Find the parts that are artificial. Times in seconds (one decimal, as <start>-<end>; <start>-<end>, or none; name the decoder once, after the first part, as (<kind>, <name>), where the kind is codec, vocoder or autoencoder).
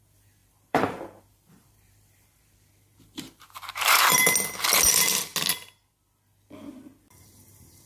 0.4-4.1 (vocoder, BigVGAN v2)